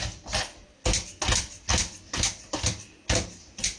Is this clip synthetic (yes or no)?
no